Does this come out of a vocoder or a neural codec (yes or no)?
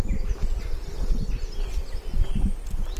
yes